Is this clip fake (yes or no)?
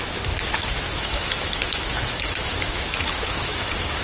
yes